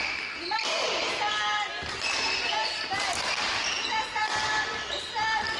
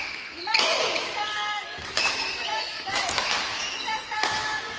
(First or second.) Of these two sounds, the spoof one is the second